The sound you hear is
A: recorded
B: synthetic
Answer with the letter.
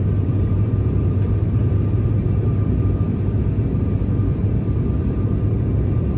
B